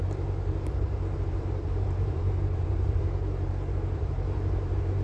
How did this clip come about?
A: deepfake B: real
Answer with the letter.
A